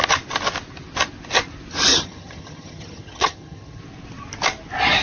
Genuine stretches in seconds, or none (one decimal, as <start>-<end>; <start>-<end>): 0.0-1.9; 3.8-5.0